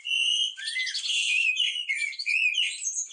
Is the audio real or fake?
real